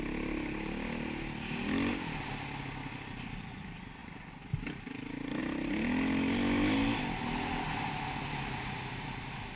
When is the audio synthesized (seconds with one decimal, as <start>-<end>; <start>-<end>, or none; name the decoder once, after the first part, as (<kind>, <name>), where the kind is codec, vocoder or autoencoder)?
none

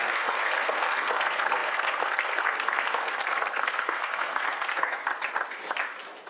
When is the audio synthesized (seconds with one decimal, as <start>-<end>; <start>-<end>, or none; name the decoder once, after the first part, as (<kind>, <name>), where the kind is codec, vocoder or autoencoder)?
0.0-5.0 (codec, SNAC)

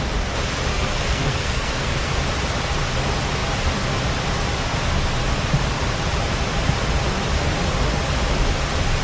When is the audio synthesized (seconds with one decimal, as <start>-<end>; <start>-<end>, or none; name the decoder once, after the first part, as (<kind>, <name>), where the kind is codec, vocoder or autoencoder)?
0.7-2.1 (codec, SNAC)

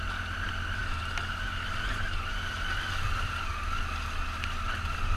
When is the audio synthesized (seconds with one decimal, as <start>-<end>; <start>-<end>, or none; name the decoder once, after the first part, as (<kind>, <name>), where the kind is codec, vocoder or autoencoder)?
none

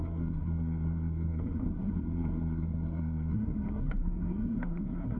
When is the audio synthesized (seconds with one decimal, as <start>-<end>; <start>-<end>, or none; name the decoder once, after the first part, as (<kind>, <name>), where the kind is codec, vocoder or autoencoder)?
0.0-5.2 (codec, SNAC)

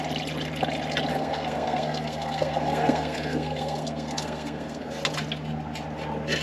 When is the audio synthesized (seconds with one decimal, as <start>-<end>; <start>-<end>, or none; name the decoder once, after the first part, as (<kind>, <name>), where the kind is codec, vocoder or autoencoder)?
1.1-4.9 (codec, SNAC)

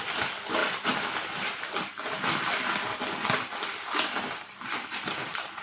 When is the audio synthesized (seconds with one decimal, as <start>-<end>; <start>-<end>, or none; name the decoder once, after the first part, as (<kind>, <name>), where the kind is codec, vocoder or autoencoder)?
none